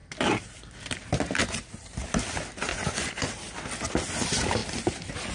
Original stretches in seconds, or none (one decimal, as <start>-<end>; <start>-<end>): 0.0-2.7; 3.3-5.3